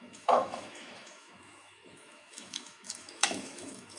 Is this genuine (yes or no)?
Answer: no